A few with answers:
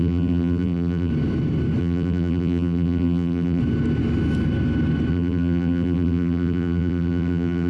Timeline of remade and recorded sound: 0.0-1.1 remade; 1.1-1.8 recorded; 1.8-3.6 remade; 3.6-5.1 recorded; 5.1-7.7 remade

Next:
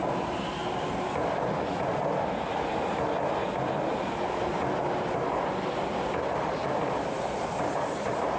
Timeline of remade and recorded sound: 0.0-6.6 recorded; 6.6-8.4 remade

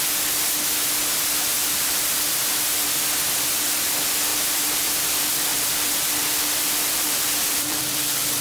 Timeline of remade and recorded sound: 0.0-1.6 recorded; 1.6-2.2 remade; 2.2-4.3 recorded; 4.3-5.1 remade; 5.1-5.5 recorded; 5.5-8.4 remade